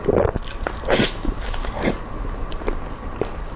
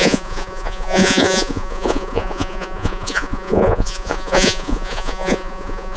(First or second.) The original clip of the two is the first